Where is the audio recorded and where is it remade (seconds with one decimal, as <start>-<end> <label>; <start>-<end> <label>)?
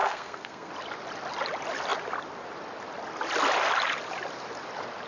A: 0.0-0.7 remade; 0.7-5.1 recorded